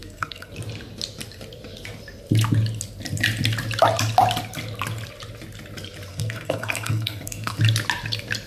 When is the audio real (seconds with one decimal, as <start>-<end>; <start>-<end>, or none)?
0.5-6.1; 7.6-8.5